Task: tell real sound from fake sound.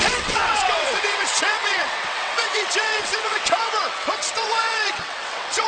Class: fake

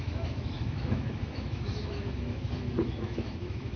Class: fake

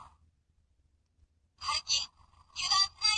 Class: real